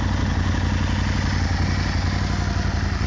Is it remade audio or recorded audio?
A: recorded